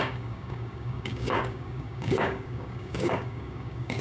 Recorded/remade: remade